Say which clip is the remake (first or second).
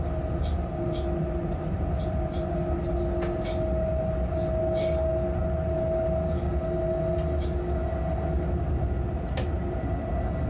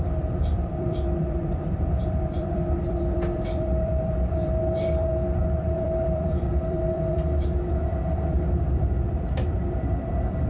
second